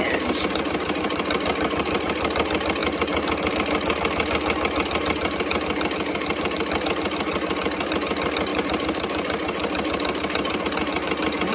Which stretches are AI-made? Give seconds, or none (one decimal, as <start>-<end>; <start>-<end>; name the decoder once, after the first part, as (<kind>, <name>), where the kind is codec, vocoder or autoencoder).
8.5-10.6 (vocoder, BigVGAN v2)